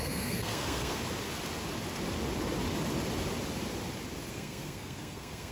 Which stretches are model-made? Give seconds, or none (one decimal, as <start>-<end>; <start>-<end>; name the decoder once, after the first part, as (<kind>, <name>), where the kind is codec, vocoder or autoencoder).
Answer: 0.0-1.0 (codec, SNAC); 4.3-5.5

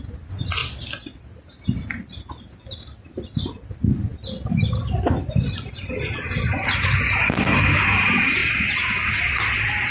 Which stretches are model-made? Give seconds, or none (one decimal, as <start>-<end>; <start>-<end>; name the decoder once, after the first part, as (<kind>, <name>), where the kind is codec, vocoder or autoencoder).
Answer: none